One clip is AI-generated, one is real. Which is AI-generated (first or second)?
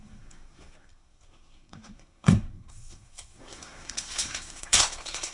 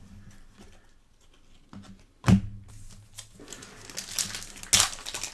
first